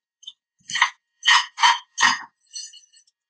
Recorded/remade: remade